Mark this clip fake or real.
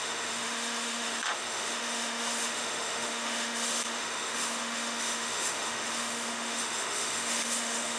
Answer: fake